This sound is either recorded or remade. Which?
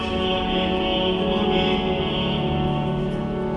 recorded